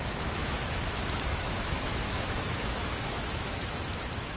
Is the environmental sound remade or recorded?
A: remade